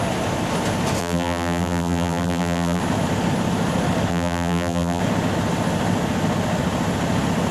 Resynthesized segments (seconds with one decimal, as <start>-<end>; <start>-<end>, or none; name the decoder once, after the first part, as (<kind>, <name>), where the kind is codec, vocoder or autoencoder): 1.0-2.8 (vocoder, BigVGAN v2); 4.1-5.0